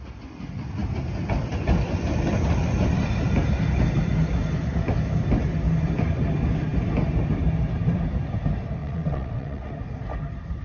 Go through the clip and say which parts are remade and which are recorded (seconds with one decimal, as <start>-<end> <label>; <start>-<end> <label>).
0.0-8.8 recorded; 8.8-9.7 remade; 9.7-10.6 recorded